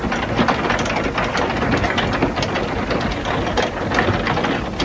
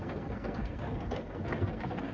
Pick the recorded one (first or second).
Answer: first